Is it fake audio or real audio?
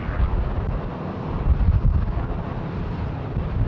real